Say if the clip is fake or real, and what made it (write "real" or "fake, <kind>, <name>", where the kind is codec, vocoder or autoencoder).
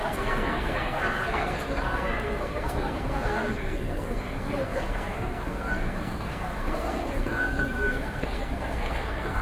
fake, codec, SNAC